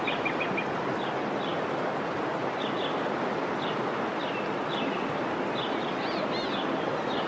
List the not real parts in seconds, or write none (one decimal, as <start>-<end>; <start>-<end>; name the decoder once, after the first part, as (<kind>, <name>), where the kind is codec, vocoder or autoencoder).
none